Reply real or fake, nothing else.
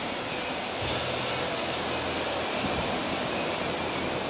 real